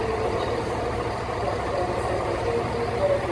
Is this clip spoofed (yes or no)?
no